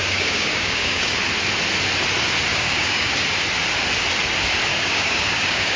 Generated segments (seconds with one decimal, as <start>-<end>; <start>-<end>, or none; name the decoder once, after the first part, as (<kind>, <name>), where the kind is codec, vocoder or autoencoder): 0.0-1.2 (codec, DAC); 2.5-3.1; 4.7-5.8